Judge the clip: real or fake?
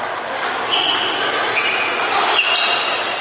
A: real